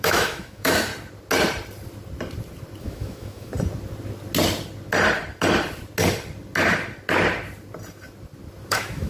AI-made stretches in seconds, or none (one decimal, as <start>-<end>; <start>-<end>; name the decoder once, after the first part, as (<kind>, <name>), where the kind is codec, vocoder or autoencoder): 0.0-0.9 (autoencoder, DAC-VAE); 2.8-3.5; 8.7-9.1